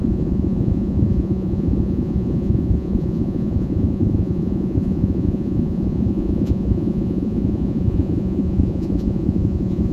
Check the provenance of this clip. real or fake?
fake